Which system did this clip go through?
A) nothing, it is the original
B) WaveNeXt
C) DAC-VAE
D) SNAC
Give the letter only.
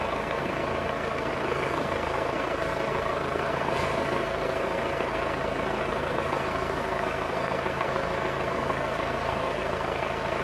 D